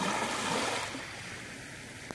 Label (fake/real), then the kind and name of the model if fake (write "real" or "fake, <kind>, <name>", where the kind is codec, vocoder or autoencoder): real